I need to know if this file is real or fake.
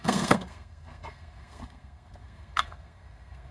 fake